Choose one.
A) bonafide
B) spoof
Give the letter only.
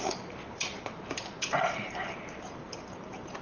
B